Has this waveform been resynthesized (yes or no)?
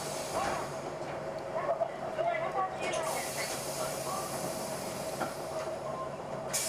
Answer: yes